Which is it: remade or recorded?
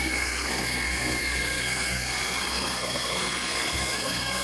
remade